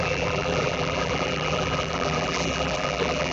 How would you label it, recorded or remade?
remade